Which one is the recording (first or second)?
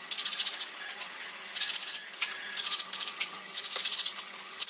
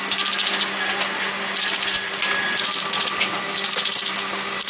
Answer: second